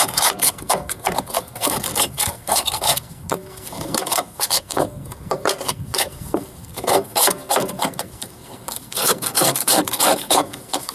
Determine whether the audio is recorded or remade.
remade